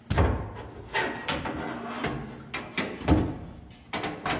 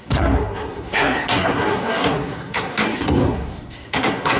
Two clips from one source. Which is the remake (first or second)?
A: second